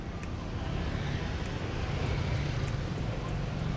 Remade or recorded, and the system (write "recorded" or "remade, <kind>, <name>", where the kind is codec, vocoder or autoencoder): recorded